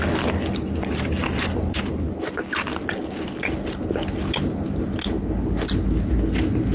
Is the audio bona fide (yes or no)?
yes